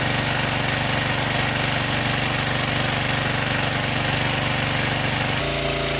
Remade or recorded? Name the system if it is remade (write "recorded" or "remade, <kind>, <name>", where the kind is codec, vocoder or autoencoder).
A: recorded